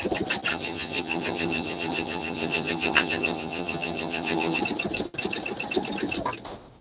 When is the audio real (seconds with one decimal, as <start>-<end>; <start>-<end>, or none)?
0.0-0.5; 4.6-6.8